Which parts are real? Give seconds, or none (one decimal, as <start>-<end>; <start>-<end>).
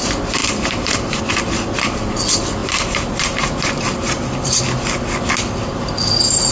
0.0-0.4; 1.2-2.6; 4.6-6.5